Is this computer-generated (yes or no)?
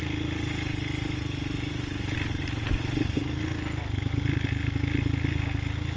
no